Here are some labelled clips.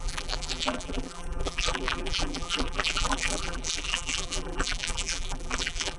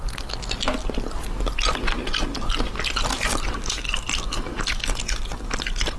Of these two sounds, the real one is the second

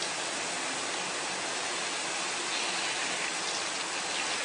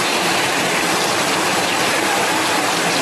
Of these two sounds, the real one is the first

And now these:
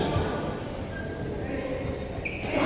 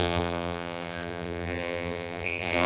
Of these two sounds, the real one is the first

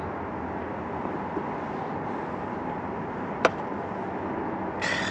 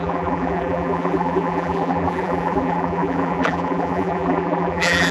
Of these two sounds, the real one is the first